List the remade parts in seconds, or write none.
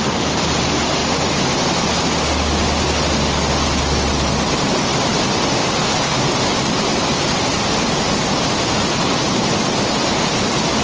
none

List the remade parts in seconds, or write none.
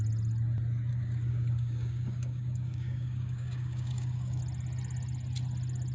0.9-4.4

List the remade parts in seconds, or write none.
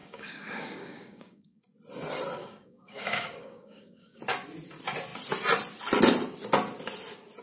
0.0-1.6; 2.4-4.2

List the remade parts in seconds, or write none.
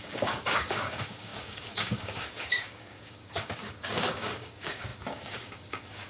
0.0-6.1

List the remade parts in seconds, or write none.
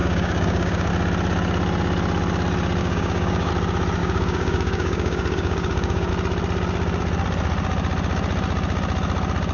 0.0-0.9; 2.8-3.5; 4.0-6.1